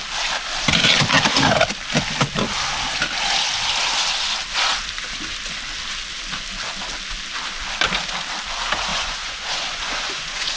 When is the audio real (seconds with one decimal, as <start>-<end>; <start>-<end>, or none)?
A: 0.0-8.9